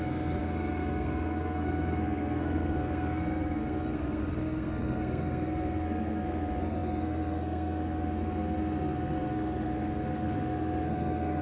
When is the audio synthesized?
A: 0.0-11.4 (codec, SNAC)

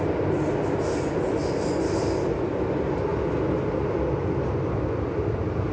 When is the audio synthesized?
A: none

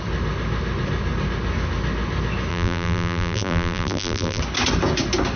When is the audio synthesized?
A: 2.5-4.4 (vocoder, BigVGAN v2)

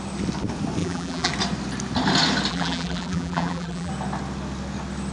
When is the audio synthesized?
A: 0.8-1.3 (vocoder, BigVGAN v2); 2.5-3.9

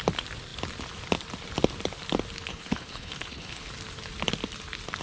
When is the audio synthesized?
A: 2.5-3.7 (codec, HILCodec)